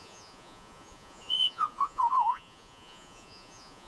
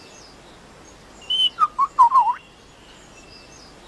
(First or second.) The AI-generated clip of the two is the first